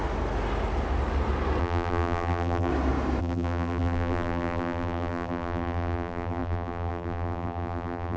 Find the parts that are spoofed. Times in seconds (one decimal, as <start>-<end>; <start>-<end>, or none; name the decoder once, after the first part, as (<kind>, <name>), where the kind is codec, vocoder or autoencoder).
1.6-2.7 (vocoder, BigVGAN v2); 3.2-8.2